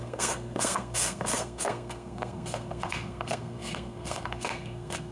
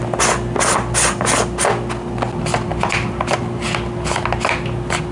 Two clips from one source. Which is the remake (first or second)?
first